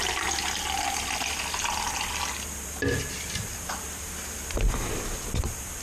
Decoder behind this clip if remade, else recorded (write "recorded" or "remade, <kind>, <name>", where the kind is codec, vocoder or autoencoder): recorded